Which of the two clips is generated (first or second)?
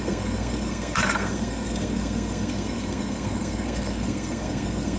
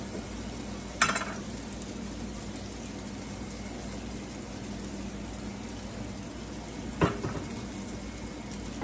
first